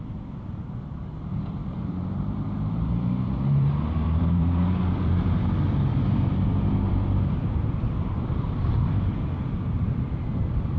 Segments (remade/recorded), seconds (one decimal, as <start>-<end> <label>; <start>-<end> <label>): 0.0-10.8 remade